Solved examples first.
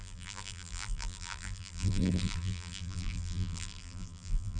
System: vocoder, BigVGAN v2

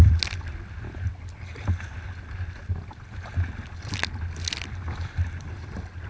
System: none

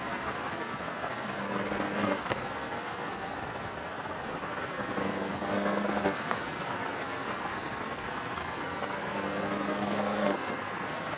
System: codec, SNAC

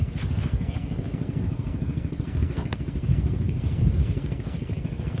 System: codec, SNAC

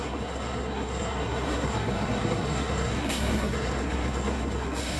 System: codec, SNAC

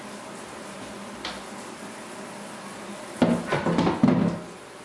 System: none